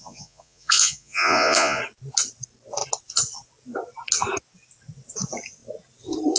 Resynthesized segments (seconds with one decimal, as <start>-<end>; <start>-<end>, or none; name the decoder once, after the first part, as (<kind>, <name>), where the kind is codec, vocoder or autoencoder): 0.0-1.8 (vocoder, Vocos)